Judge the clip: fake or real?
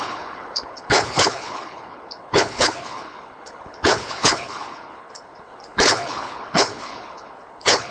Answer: fake